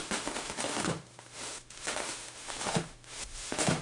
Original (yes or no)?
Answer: no